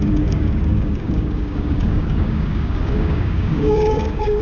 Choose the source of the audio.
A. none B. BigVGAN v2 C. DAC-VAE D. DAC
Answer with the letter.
D